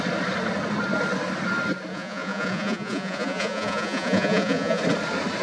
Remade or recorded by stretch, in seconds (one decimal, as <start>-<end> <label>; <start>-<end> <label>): 0.0-1.9 recorded; 1.9-4.8 remade; 4.8-5.4 recorded